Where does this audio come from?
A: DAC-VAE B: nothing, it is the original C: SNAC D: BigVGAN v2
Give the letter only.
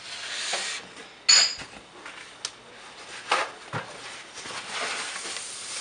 B